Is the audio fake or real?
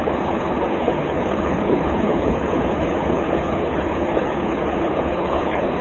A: fake